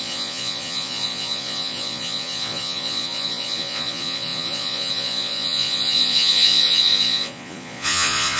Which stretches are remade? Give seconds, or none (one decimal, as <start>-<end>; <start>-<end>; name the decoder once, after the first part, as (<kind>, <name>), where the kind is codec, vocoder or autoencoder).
0.0-8.4 (vocoder, Vocos)

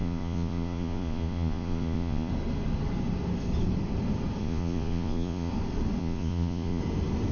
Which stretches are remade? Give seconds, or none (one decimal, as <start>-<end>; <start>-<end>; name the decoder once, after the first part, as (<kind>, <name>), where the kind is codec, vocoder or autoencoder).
0.0-2.3 (vocoder, Vocos); 4.4-5.5; 6.0-6.8

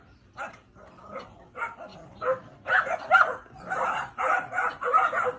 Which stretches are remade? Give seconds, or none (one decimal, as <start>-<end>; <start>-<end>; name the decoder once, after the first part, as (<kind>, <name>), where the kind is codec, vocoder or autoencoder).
none

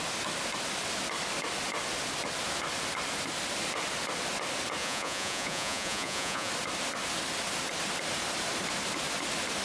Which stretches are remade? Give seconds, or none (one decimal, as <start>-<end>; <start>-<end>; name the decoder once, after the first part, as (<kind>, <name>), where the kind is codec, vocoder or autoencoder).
4.8-6.5 (vocoder, Vocos)

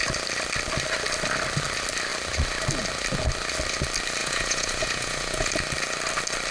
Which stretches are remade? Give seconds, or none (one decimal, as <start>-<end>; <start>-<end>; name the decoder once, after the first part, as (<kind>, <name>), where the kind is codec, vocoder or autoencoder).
4.2-5.5 (vocoder, Vocos)